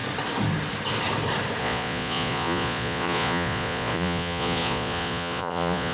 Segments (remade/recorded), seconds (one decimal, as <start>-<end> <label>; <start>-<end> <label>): 0.0-1.6 recorded; 1.6-5.9 remade